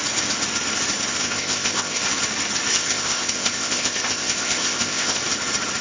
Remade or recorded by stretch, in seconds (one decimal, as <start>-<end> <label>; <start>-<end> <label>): 0.0-1.2 recorded; 1.2-2.0 remade; 2.0-2.7 recorded; 2.7-5.2 remade; 5.2-5.8 recorded

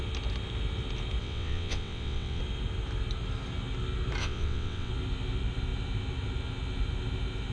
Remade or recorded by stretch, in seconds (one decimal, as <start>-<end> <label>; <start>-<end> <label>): 0.0-1.2 recorded; 1.2-2.4 remade; 2.4-4.2 recorded; 4.2-4.9 remade; 4.9-7.5 recorded

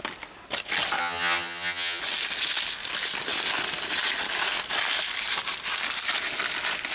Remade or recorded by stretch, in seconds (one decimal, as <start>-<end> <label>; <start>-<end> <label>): 0.0-1.0 recorded; 1.0-2.0 remade; 2.0-6.9 recorded

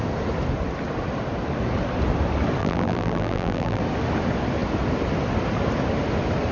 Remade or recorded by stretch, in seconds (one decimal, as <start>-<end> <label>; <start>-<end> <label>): 0.0-2.6 recorded; 2.6-3.8 remade; 3.8-6.5 recorded

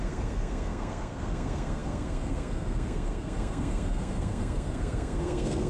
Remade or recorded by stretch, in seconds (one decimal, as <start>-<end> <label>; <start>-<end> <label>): 0.0-5.7 remade

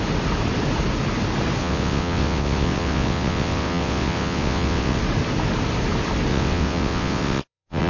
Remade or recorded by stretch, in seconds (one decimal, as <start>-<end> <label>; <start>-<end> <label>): 0.0-1.6 recorded; 1.6-5.0 remade; 5.0-6.3 recorded; 6.3-7.9 remade

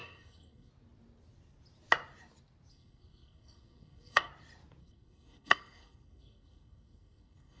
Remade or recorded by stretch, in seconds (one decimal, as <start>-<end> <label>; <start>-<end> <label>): 0.0-0.7 remade; 0.7-2.7 recorded; 2.7-4.3 remade; 4.3-4.8 recorded; 4.8-7.6 remade